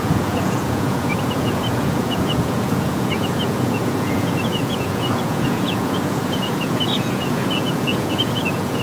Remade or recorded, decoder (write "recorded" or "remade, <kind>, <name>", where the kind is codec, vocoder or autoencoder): remade, vocoder, Vocos